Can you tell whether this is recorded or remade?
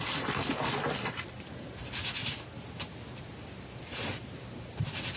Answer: recorded